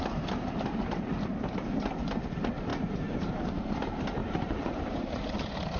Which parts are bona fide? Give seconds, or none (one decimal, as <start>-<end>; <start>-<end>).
0.0-2.7; 3.5-4.2